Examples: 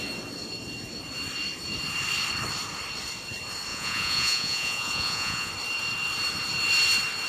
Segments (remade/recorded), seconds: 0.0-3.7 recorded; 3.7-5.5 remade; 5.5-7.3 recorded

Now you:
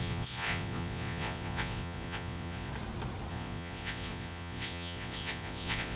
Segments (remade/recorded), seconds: 0.0-2.7 remade; 2.7-3.3 recorded; 3.3-6.0 remade

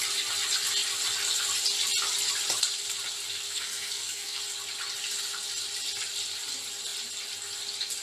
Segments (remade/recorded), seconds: 0.0-3.3 recorded; 3.3-4.4 remade; 4.4-8.0 recorded

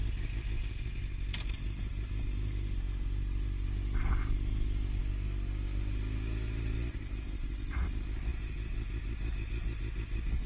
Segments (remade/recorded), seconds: 0.0-10.5 recorded

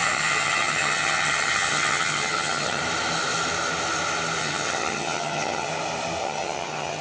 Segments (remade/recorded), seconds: 0.0-2.8 remade; 2.8-4.4 recorded; 4.4-5.7 remade; 5.7-6.2 recorded; 6.2-7.0 remade